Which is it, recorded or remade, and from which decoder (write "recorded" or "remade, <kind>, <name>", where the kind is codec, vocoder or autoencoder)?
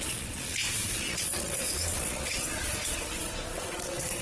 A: remade, vocoder, Vocos